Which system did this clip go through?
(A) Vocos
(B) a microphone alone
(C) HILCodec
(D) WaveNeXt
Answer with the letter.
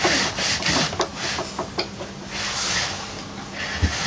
B